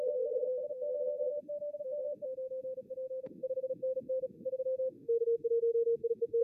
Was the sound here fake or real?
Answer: fake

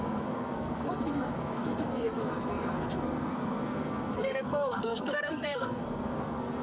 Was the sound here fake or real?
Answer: fake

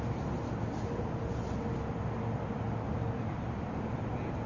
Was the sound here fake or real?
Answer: real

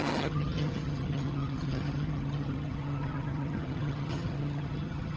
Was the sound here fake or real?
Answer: fake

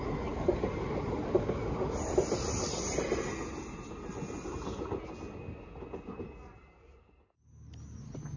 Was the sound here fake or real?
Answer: real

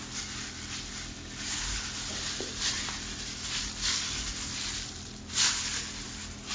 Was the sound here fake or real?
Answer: real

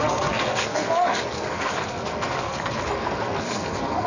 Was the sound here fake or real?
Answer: fake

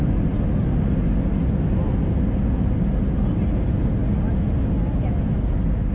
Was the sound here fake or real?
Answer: real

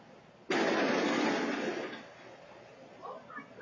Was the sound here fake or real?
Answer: real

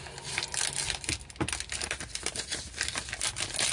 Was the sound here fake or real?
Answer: real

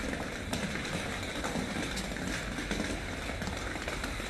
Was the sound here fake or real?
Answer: real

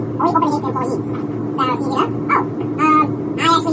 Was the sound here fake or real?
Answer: real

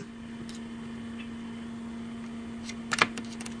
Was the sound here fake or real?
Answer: real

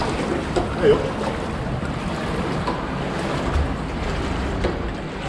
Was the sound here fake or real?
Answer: real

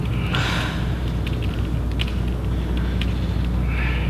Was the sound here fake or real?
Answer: real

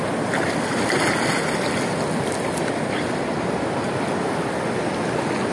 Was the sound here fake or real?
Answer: real